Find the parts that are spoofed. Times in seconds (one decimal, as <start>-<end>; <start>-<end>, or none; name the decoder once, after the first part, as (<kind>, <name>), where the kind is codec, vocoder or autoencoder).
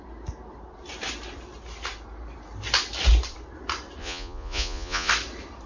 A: 4.0-5.1 (vocoder, Vocos)